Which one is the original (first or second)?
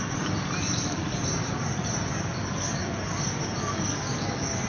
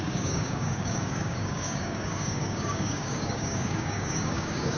first